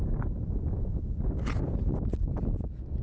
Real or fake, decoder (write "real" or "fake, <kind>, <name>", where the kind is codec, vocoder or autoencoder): real